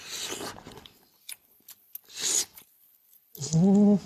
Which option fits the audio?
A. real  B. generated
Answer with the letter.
A